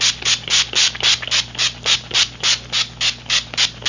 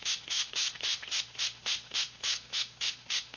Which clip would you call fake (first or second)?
second